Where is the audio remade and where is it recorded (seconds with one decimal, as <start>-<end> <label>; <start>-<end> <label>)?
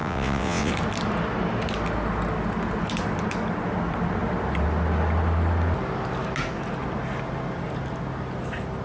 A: 0.0-0.7 remade; 0.7-8.8 recorded